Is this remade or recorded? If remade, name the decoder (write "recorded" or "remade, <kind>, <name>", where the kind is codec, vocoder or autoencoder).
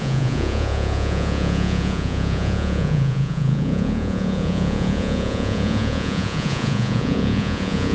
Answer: remade, vocoder, Vocos